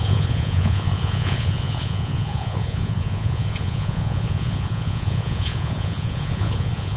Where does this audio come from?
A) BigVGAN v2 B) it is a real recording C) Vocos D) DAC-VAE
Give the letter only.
C